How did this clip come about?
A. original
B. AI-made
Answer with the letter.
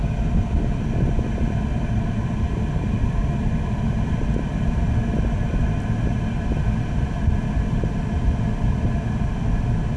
A